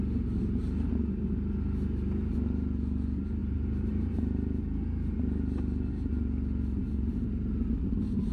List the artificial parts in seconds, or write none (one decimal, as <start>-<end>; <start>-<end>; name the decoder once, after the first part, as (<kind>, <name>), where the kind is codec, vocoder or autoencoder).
3.4-4.2 (vocoder, BigVGAN v2)